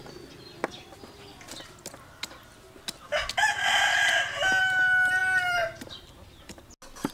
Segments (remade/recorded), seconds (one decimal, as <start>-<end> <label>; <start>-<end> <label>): 0.0-7.1 recorded